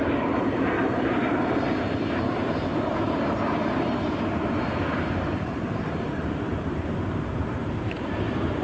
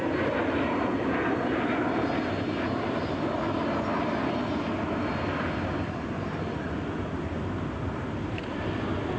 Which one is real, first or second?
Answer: second